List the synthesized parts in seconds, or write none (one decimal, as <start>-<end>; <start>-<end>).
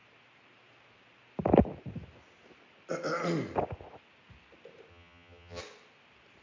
4.9-5.6